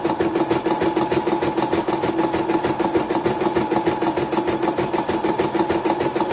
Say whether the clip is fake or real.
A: real